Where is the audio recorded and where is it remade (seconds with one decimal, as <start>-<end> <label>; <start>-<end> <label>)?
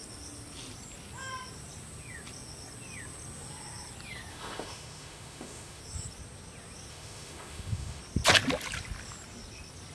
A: 0.0-4.3 recorded; 4.3-5.8 remade; 5.8-6.9 recorded; 6.9-8.0 remade; 8.0-9.9 recorded